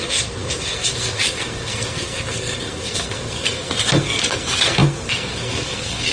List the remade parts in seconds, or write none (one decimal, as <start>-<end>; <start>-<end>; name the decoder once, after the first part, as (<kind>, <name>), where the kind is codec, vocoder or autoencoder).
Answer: 0.0-6.1 (codec, SNAC)